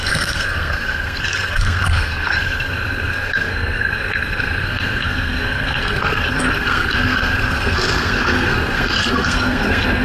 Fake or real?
fake